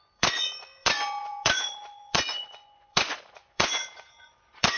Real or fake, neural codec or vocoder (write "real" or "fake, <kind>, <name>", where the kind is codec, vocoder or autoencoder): fake, vocoder, Vocos